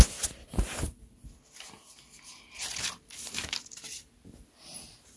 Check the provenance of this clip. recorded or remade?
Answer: recorded